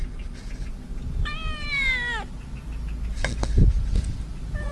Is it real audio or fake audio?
real